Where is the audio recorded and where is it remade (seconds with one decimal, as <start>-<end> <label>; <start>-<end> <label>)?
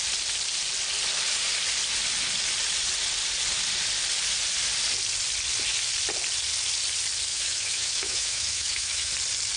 0.0-7.3 recorded; 7.3-9.1 remade; 9.1-9.6 recorded